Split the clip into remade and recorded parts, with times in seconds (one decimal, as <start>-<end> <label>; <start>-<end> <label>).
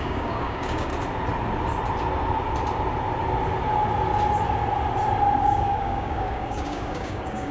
0.0-0.9 remade; 0.9-5.4 recorded; 5.4-7.5 remade